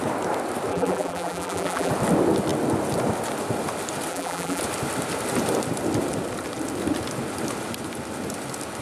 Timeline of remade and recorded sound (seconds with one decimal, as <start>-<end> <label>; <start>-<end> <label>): 0.0-0.7 recorded; 0.7-1.9 remade; 1.9-4.1 recorded; 4.1-4.6 remade; 4.6-8.8 recorded